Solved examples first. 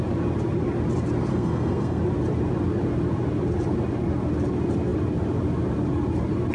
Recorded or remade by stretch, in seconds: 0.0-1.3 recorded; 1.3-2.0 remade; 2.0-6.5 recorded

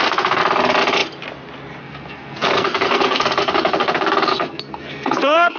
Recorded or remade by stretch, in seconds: 0.0-0.4 remade; 0.4-1.8 recorded; 1.8-5.6 remade

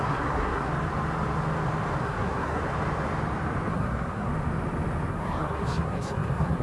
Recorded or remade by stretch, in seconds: 0.0-0.7 remade; 0.7-2.0 recorded; 2.0-2.6 remade; 2.6-3.7 recorded; 3.7-4.3 remade; 4.3-5.1 recorded; 5.1-6.6 remade